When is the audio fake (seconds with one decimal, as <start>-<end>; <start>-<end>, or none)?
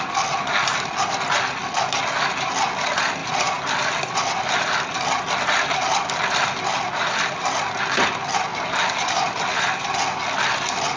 3.2-7.8; 8.5-10.0